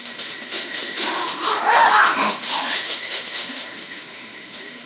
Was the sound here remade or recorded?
remade